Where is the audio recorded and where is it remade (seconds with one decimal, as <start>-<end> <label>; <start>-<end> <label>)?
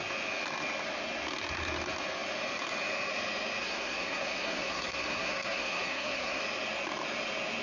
0.0-3.6 recorded; 3.6-6.4 remade; 6.4-7.6 recorded